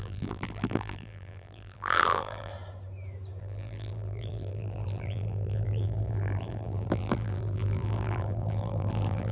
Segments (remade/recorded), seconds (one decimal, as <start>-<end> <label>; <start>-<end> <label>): 0.0-2.5 remade; 2.5-3.4 recorded; 3.4-9.3 remade